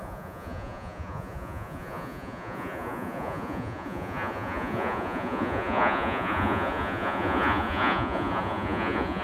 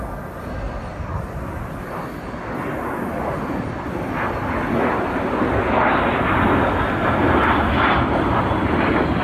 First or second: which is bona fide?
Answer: second